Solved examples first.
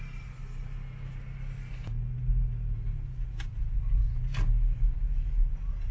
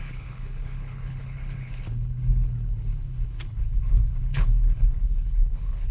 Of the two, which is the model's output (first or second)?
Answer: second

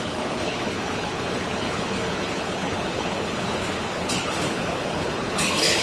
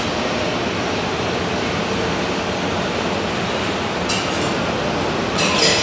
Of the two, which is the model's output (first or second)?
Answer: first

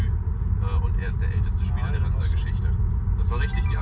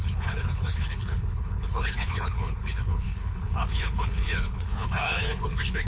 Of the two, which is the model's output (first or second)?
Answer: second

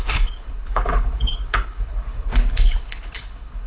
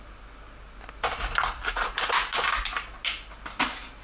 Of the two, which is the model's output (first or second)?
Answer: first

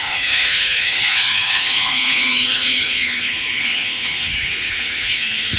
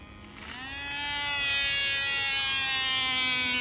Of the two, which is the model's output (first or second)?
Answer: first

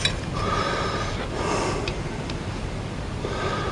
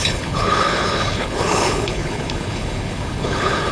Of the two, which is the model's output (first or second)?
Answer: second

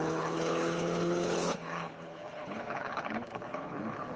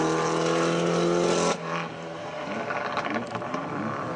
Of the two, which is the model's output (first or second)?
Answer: first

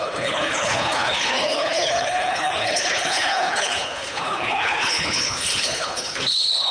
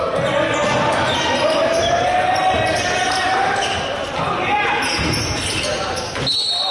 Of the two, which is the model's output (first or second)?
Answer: first